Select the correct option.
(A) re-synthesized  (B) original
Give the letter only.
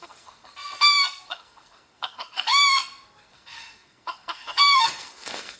A